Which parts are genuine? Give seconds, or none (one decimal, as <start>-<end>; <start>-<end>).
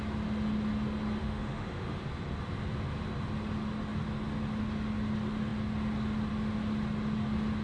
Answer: 0.0-1.2; 2.0-7.6